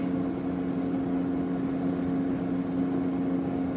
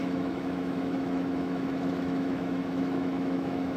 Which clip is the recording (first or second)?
first